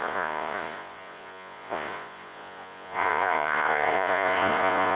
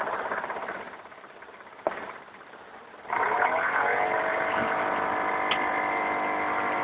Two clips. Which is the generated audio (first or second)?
first